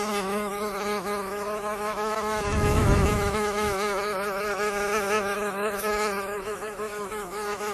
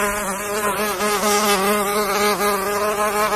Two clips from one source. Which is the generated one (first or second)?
first